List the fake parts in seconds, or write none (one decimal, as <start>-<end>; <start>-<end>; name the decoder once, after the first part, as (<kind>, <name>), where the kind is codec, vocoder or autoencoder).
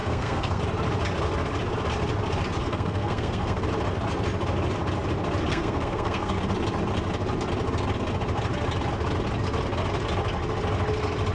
0.0-0.6 (codec, SNAC); 2.6-3.6; 5.5-6.4